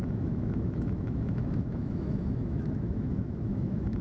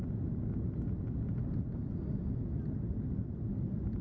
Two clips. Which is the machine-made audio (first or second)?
first